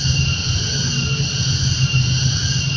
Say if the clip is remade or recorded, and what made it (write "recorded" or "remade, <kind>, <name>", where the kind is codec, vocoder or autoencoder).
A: recorded